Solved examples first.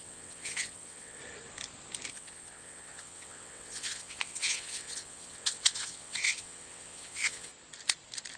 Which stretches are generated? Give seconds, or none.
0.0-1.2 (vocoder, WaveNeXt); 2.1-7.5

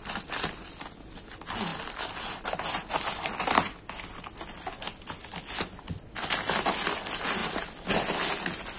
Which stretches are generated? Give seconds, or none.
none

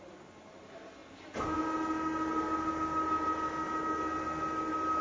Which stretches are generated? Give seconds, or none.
none